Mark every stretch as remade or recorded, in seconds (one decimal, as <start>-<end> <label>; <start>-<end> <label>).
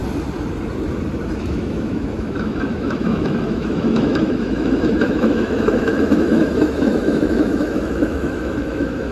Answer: 0.0-1.4 recorded; 1.4-9.1 remade